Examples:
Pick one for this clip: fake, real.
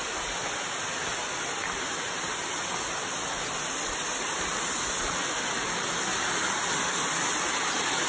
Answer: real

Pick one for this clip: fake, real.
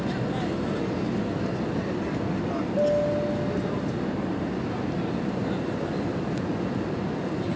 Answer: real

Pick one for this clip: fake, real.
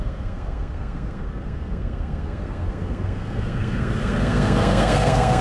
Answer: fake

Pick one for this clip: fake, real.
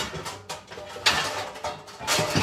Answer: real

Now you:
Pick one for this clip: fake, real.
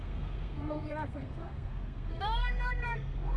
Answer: fake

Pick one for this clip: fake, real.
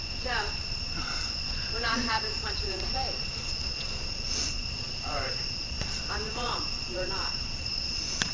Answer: fake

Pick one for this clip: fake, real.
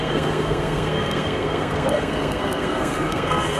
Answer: fake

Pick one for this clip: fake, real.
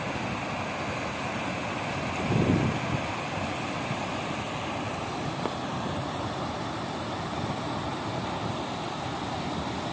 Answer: real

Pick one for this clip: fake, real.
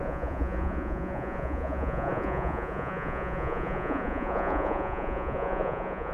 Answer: fake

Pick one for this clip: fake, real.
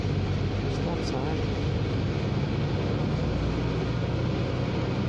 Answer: real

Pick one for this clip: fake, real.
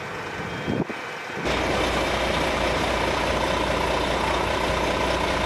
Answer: real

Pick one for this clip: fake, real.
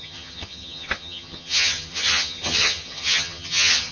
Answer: fake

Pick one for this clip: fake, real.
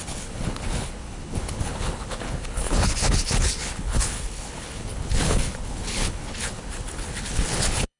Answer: fake